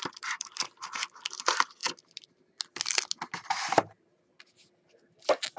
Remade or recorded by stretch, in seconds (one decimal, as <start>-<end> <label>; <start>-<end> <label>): 0.0-5.6 recorded